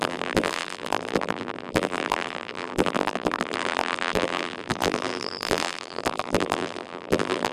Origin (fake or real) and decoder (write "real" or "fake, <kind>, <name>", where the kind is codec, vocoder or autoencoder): fake, vocoder, BigVGAN v2